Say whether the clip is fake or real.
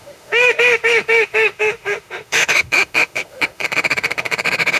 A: fake